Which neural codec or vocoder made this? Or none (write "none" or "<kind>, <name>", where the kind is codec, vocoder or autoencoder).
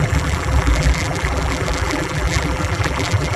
vocoder, BigVGAN v2